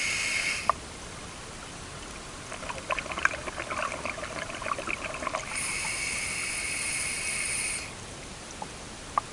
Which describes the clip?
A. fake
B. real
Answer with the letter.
B